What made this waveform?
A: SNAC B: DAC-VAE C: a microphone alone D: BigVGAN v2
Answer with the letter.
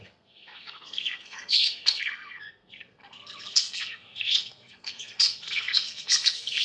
A